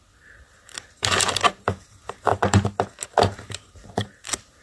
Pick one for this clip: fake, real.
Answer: fake